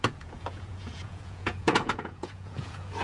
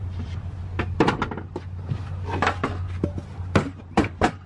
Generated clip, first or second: first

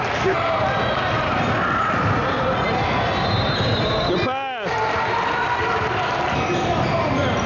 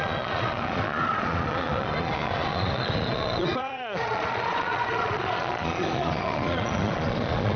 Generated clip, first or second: second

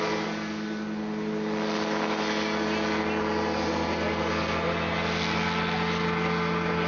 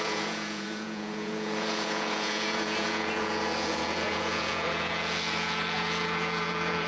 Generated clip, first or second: second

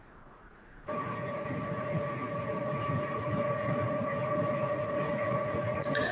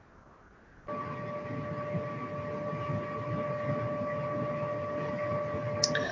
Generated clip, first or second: first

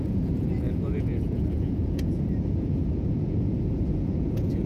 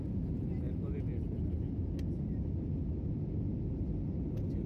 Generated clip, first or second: first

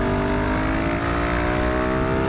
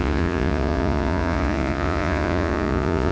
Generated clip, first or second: second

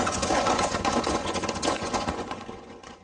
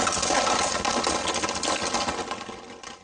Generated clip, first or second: first